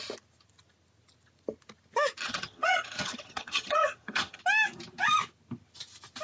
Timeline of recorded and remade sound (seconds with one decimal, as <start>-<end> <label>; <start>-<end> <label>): 0.0-2.2 recorded; 2.2-4.4 remade; 4.4-6.2 recorded